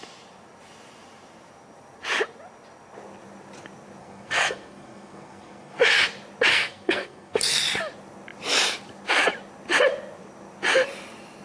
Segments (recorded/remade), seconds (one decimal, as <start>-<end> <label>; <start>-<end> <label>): 0.0-4.0 recorded; 4.0-5.8 remade; 5.8-6.5 recorded; 6.5-7.4 remade; 7.4-11.4 recorded